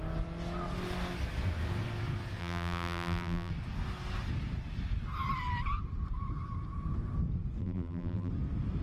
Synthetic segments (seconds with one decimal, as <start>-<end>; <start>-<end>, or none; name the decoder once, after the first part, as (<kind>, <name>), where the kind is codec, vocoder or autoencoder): 2.4-3.5 (vocoder, BigVGAN v2); 7.6-8.3